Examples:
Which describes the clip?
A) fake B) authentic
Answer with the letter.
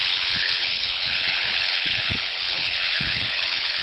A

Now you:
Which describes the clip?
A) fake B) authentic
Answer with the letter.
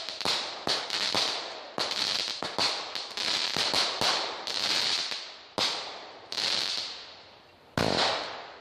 B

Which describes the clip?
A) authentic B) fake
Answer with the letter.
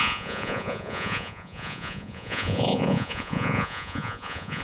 B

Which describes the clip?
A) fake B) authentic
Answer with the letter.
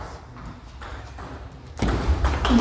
B